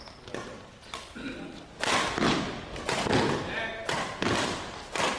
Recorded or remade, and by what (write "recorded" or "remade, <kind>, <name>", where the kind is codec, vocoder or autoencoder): recorded